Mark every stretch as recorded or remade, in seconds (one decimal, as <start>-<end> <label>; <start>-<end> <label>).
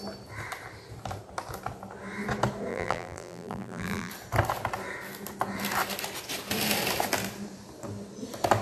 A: 0.0-2.7 recorded; 2.7-4.1 remade; 4.1-8.6 recorded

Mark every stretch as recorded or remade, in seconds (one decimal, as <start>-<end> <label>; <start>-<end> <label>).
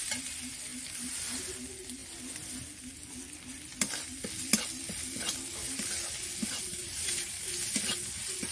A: 0.0-0.7 recorded; 0.7-1.4 remade; 1.4-6.8 recorded; 6.8-7.5 remade; 7.5-8.5 recorded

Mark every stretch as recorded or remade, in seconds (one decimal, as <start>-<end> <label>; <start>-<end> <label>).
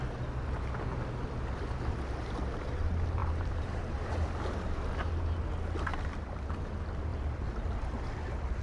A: 0.0-3.2 recorded; 3.2-4.1 remade; 4.1-5.9 recorded; 5.9-6.5 remade; 6.5-8.6 recorded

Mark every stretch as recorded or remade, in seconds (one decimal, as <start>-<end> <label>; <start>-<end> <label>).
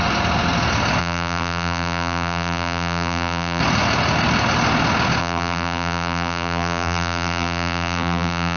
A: 0.0-1.0 recorded; 1.0-3.6 remade; 3.6-5.2 recorded; 5.2-8.6 remade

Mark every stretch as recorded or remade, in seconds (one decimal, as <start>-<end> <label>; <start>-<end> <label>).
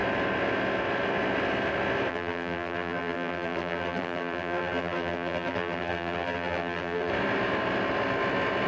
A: 0.0-2.1 recorded; 2.1-7.1 remade; 7.1-8.7 recorded